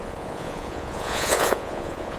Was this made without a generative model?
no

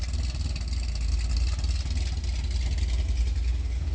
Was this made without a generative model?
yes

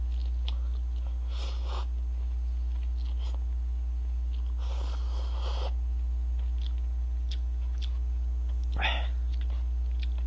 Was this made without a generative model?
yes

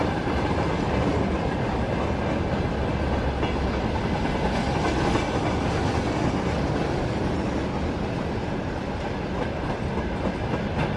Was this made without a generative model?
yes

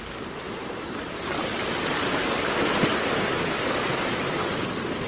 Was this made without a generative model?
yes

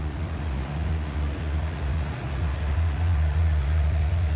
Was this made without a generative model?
no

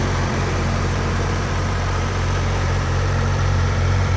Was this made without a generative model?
no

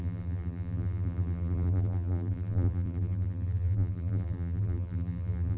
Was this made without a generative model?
no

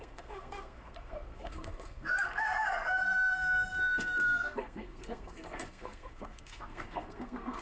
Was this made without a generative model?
no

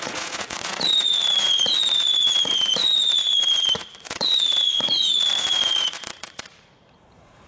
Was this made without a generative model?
no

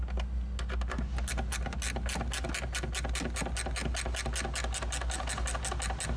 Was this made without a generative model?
yes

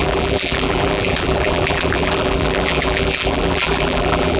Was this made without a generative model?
no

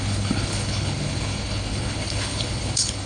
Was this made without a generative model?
no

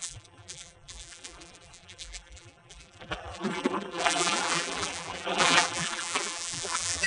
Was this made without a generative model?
no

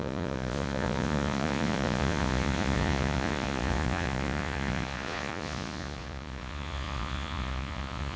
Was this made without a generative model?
no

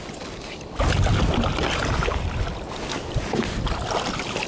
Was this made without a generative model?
yes